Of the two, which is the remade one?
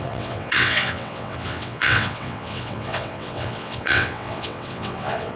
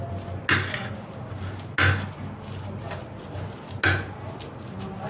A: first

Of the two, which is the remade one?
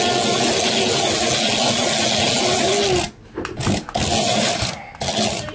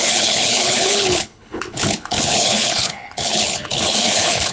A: second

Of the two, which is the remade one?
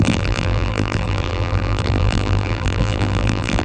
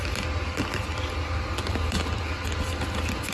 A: first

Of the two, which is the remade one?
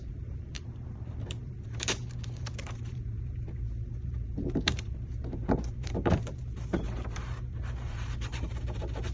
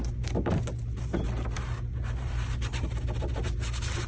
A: first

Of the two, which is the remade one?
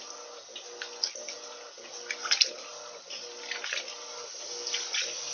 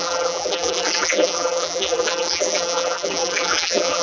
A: second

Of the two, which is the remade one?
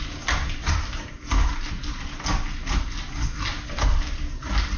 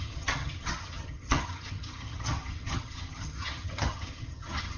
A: second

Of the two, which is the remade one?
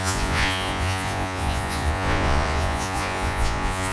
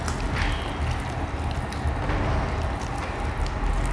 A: first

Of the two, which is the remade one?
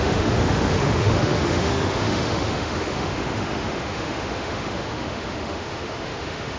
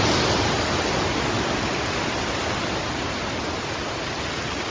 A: first